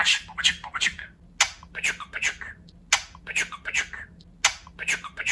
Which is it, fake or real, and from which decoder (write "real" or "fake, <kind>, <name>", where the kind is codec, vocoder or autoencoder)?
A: real